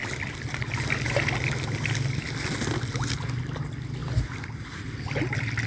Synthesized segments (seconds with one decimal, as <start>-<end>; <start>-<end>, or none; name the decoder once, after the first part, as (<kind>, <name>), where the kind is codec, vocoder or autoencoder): none